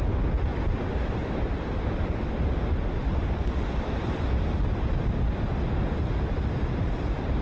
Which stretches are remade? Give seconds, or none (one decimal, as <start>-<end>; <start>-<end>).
none